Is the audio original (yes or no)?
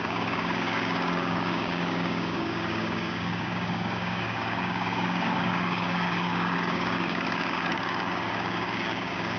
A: no